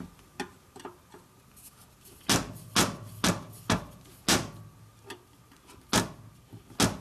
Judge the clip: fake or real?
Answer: real